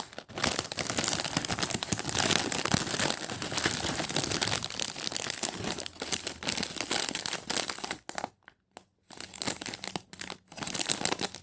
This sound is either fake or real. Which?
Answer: real